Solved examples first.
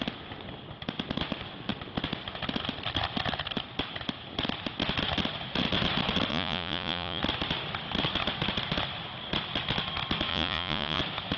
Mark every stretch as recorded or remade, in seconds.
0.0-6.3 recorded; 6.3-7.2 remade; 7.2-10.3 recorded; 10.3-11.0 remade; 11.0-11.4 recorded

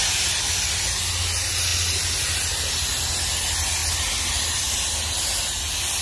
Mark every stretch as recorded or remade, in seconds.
0.0-6.0 recorded

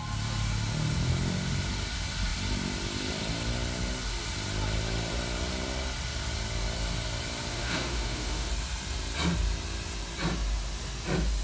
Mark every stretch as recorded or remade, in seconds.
0.0-7.5 recorded; 7.5-8.5 remade; 8.5-11.4 recorded

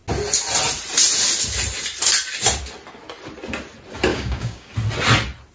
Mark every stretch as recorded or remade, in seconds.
0.0-4.1 recorded; 4.1-4.7 remade; 4.7-5.5 recorded